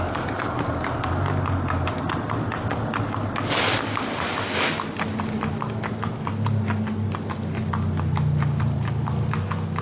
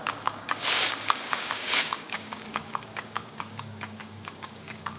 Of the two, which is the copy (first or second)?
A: second